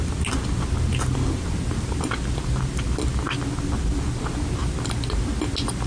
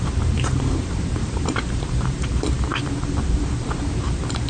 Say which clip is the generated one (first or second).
second